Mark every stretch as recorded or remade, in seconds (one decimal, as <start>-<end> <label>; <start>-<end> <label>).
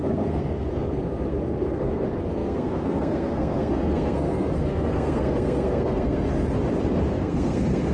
0.0-6.3 remade; 6.3-7.2 recorded; 7.2-7.9 remade